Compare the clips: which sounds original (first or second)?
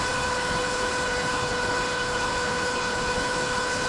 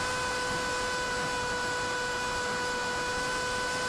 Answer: second